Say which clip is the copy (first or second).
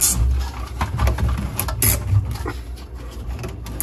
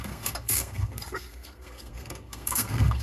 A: second